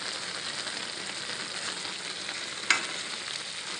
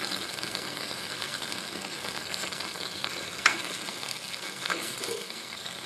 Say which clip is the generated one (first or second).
second